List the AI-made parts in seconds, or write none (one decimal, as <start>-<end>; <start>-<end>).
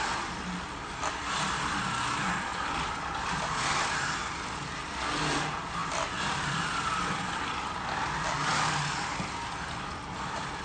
5.8-7.4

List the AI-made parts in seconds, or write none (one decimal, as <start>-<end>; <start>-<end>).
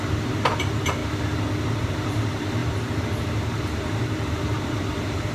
0.0-1.0; 1.8-5.3